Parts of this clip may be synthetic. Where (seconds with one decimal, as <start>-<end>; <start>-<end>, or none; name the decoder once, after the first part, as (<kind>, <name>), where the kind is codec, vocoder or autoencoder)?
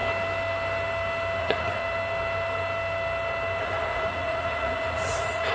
1.4-1.8 (vocoder, Vocos); 3.6-5.5